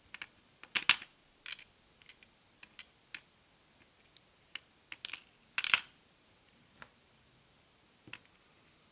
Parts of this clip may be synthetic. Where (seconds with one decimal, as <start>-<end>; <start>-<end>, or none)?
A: none